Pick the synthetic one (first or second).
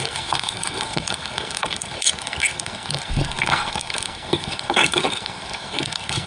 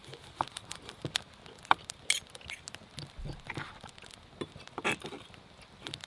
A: first